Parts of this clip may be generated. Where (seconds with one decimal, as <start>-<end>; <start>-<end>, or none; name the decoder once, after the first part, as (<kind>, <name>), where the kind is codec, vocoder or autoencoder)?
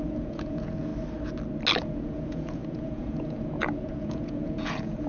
0.0-0.9 (vocoder, Vocos); 1.8-5.1